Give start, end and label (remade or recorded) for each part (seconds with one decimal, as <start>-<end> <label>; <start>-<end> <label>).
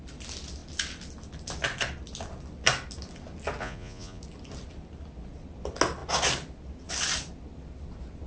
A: 0.0-3.6 recorded; 3.6-4.2 remade; 4.2-8.3 recorded